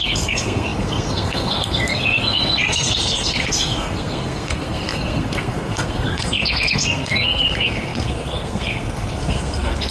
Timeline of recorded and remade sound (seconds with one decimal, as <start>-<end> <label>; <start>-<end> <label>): 0.0-9.9 remade